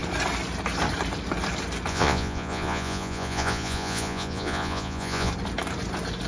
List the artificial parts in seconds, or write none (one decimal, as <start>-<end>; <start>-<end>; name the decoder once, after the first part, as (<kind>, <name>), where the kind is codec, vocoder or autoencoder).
1.9-5.3 (vocoder, Vocos)